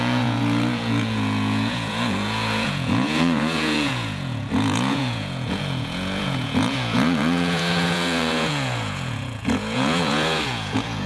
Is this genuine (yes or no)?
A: no